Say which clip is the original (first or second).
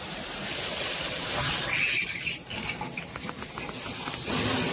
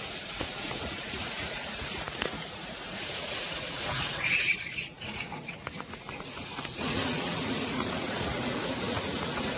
first